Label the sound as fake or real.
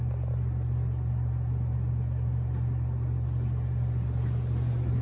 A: real